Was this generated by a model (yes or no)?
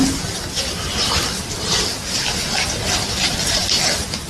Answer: no